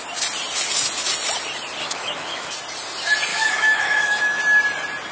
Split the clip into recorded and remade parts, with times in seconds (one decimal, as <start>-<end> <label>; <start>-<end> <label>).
0.0-1.8 recorded; 1.8-2.5 remade; 2.5-3.3 recorded; 3.3-4.4 remade; 4.4-5.1 recorded